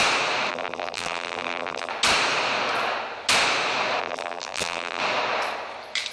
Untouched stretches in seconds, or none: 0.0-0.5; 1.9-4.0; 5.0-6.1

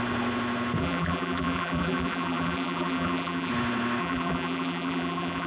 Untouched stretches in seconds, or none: 0.0-0.8; 3.5-4.0